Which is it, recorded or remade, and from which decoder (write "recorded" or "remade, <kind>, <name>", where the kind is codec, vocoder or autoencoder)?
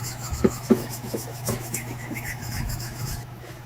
remade, autoencoder, DAC-VAE